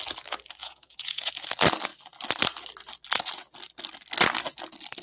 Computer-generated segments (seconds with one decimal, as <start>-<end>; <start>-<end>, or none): 0.6-1.3